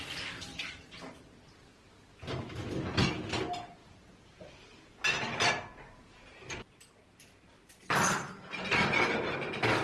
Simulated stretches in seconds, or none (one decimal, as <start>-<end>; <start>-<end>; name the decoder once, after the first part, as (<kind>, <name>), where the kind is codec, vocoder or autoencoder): 0.5-1.2 (vocoder, BigVGAN v2); 3.8-5.5